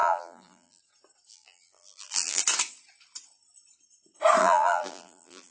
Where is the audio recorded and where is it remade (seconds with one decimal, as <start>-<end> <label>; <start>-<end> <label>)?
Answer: 0.0-0.8 remade; 0.8-1.3 recorded; 1.3-2.4 remade; 2.4-4.4 recorded; 4.4-5.5 remade